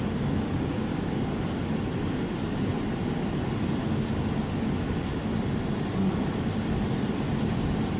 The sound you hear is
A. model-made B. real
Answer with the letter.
B